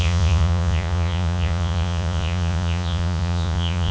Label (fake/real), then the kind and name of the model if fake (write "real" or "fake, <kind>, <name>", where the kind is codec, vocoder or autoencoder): fake, vocoder, Vocos